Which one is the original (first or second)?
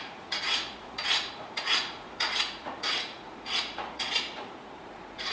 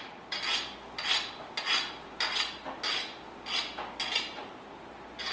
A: second